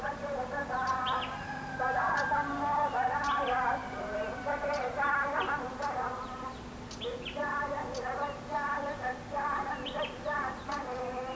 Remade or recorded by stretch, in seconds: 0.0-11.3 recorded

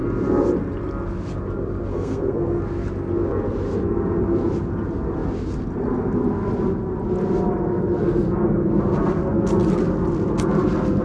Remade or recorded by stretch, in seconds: 0.0-1.9 recorded; 1.9-2.6 remade; 2.6-11.0 recorded

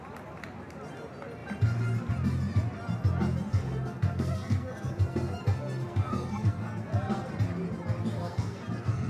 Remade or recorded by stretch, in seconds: 0.0-3.5 recorded; 3.5-7.3 remade; 7.3-8.2 recorded; 8.2-9.1 remade

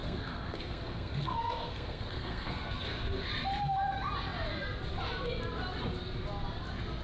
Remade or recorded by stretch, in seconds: 0.0-3.3 remade; 3.3-7.0 recorded